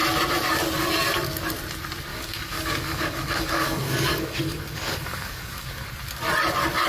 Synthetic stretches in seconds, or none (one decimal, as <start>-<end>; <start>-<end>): 2.1-5.9